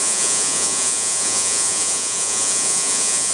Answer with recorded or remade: remade